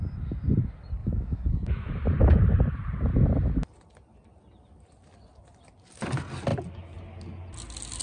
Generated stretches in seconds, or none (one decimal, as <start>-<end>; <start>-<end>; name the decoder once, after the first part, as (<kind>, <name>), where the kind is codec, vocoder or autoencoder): 1.0-1.9 (autoencoder, DAC-VAE)